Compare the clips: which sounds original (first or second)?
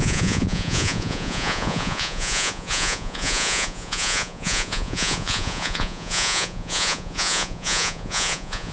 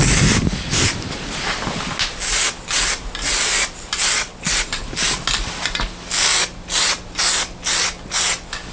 second